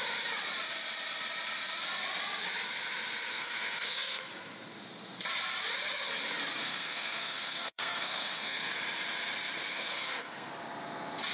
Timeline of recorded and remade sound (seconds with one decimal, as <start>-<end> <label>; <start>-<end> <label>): 0.0-3.3 recorded; 3.3-4.3 remade; 4.3-6.6 recorded; 6.6-8.7 remade; 8.7-9.7 recorded; 9.7-10.5 remade; 10.5-11.3 recorded